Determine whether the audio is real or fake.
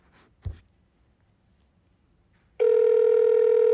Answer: real